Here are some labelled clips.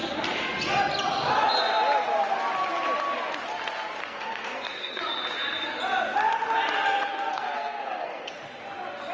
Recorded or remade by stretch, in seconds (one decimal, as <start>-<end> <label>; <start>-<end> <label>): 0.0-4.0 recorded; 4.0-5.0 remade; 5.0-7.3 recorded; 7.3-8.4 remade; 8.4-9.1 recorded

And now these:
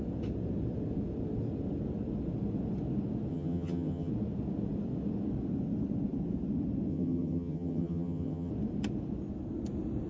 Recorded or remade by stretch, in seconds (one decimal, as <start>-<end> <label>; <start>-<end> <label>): 0.0-3.3 recorded; 3.3-4.1 remade; 4.1-6.9 recorded; 6.9-8.5 remade; 8.5-10.1 recorded

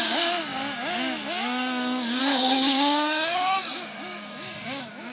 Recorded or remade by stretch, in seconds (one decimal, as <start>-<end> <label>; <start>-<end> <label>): 0.0-5.1 remade